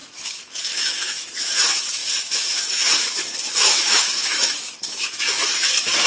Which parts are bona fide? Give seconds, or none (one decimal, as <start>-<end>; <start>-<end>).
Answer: none